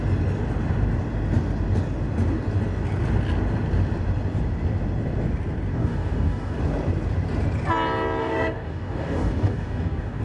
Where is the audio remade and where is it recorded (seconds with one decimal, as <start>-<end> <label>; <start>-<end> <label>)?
0.0-5.7 recorded; 5.7-6.6 remade; 6.6-8.2 recorded; 8.2-10.2 remade